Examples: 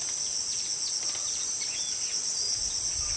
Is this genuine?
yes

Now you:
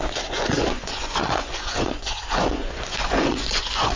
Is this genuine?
no